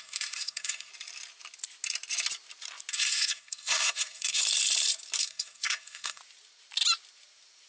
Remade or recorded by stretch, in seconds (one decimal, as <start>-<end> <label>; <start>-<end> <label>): 0.0-0.9 remade; 0.9-2.9 recorded; 2.9-4.4 remade; 4.4-5.2 recorded; 5.2-6.2 remade; 6.2-7.7 recorded